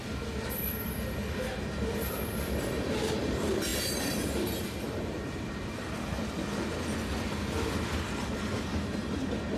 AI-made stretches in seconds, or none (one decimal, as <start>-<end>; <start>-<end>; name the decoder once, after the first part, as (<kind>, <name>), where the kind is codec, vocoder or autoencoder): 3.7-5.5 (vocoder, BigVGAN v2)